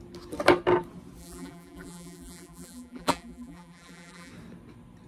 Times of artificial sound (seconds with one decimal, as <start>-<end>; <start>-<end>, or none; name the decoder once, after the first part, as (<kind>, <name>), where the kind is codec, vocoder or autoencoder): 1.2-4.3 (vocoder, BigVGAN v2)